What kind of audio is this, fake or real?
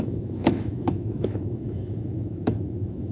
fake